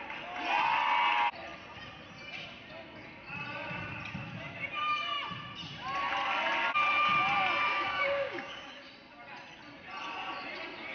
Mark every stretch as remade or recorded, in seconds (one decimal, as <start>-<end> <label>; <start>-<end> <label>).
0.0-7.7 recorded; 7.7-8.9 remade; 8.9-10.9 recorded